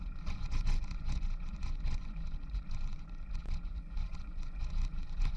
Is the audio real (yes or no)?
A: no